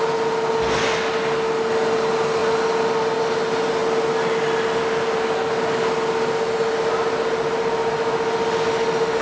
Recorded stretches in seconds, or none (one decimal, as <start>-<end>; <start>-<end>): 0.0-9.2